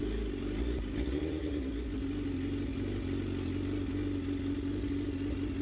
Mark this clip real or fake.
real